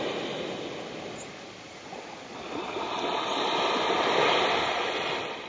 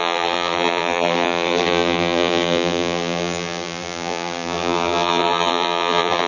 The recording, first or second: first